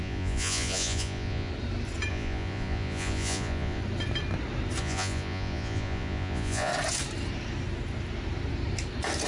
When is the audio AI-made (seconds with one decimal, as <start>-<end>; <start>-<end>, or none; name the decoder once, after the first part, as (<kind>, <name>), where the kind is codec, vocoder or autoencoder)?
0.0-1.5 (vocoder, Vocos); 2.1-3.8; 4.8-6.7